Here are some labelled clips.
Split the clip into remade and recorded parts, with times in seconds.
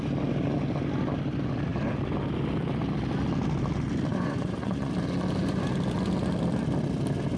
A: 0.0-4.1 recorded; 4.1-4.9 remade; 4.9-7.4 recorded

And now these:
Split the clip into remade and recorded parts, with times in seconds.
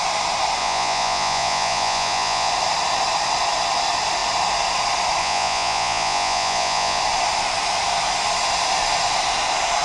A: 0.0-0.6 recorded; 0.6-2.5 remade; 2.5-5.2 recorded; 5.2-7.0 remade; 7.0-9.8 recorded